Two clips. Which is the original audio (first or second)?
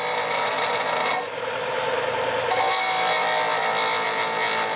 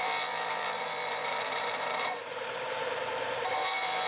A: first